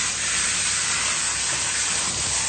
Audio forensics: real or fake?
real